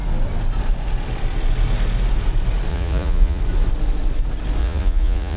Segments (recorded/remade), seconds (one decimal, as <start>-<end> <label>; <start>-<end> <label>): 0.0-2.7 recorded; 2.7-3.4 remade; 3.4-4.6 recorded; 4.6-5.4 remade